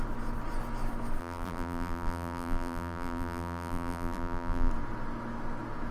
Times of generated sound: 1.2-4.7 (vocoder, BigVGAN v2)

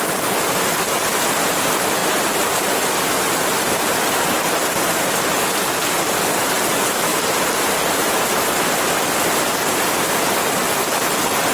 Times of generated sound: 2.0-2.6 (vocoder, BigVGAN v2); 7.1-8.1